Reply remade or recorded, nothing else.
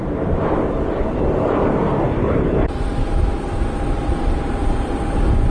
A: recorded